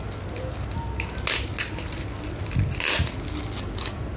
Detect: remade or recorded recorded